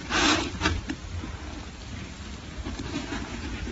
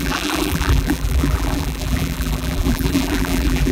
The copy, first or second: second